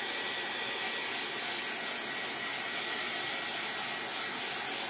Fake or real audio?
real